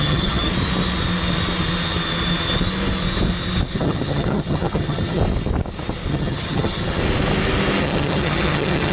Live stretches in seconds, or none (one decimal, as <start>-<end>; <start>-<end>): 0.4-3.7; 5.2-6.1; 7.0-7.8